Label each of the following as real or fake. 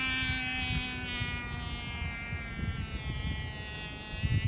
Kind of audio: real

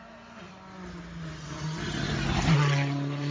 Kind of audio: real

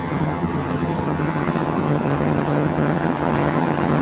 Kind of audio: fake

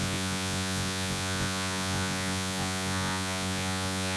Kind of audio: fake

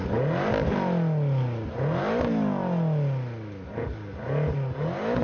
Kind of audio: real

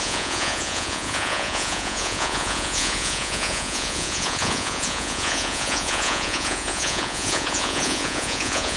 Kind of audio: fake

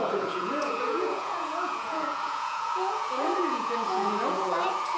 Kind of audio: fake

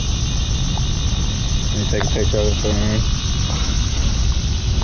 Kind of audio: real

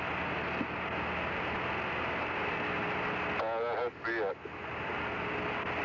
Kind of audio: real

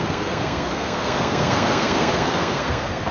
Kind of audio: fake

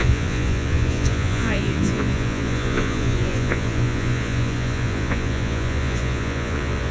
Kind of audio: fake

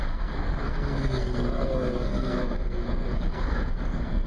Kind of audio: fake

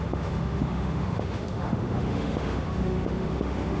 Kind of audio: fake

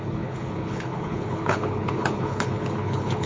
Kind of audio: fake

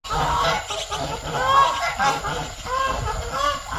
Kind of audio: real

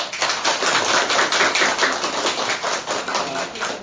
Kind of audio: real